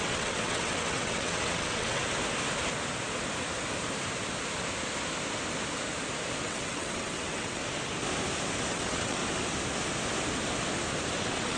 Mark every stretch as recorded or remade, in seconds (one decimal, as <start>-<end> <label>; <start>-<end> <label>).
0.0-2.0 remade; 2.0-6.4 recorded; 6.4-7.6 remade; 7.6-8.7 recorded; 8.7-9.2 remade; 9.2-11.2 recorded; 11.2-11.6 remade